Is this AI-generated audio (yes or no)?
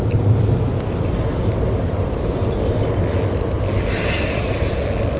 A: no